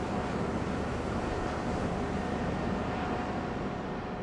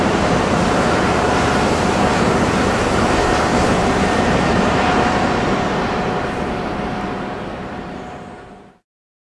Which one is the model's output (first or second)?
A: second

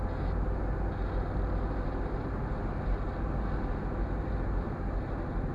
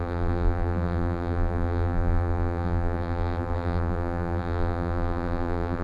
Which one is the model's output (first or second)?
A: second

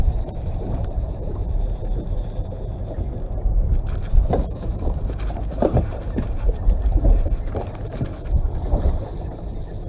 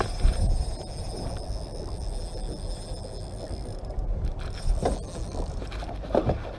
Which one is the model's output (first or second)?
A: first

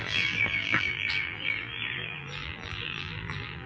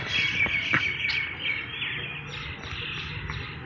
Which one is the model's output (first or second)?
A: first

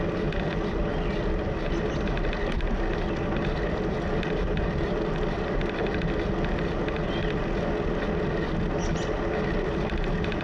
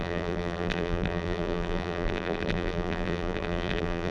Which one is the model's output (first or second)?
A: second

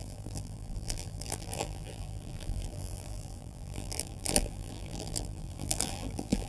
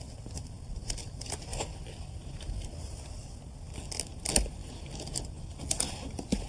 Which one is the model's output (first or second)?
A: first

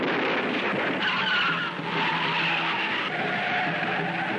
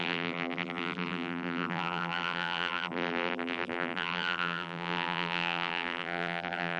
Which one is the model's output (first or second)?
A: second